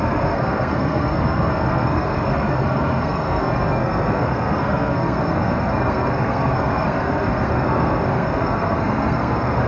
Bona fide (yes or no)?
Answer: no